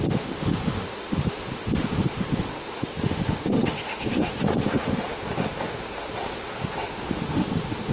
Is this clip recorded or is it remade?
remade